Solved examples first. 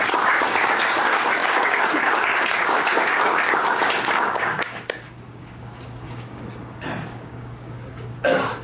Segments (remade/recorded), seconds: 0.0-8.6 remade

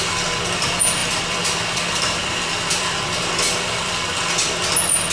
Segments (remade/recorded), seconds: 0.0-1.0 recorded; 1.0-4.1 remade; 4.1-5.1 recorded

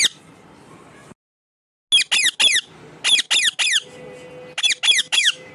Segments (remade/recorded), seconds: 0.0-5.0 recorded; 5.0-5.5 remade

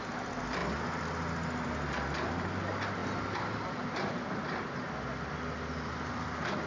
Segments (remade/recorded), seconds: 0.0-6.7 recorded

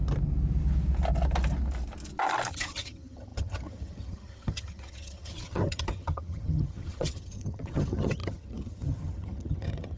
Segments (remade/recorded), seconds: 0.0-2.5 recorded; 2.5-10.0 remade

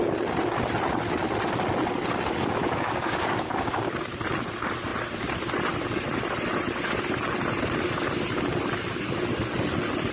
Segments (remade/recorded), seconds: 0.0-2.6 recorded; 2.6-3.9 remade; 3.9-10.1 recorded